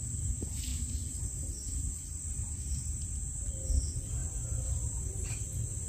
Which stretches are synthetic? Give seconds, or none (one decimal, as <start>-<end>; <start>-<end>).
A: 0.7-1.3; 2.1-2.9